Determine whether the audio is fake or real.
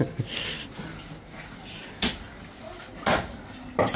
real